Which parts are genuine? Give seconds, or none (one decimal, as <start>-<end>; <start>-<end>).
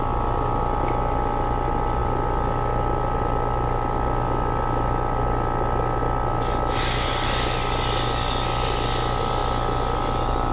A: 0.0-10.5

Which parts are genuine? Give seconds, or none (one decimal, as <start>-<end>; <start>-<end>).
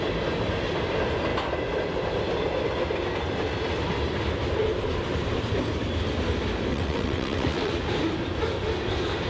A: 0.0-6.7; 7.7-9.3